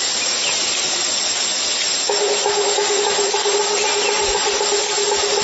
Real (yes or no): yes